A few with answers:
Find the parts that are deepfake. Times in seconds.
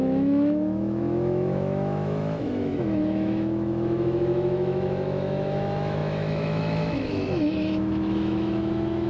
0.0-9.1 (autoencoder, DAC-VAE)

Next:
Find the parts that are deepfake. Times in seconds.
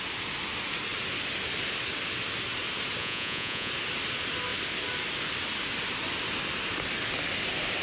3.0-3.7 (vocoder, Vocos)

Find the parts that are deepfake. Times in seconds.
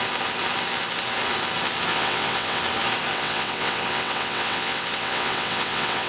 1.9-2.6 (vocoder, WaveNeXt); 3.1-6.1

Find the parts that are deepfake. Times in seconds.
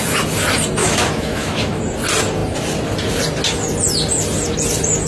0.8-1.8 (autoencoder, DAC-VAE)